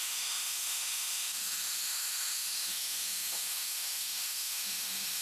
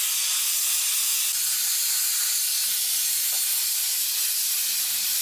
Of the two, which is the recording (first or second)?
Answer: second